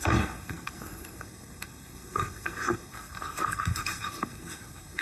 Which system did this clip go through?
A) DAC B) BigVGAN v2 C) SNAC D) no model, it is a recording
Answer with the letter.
C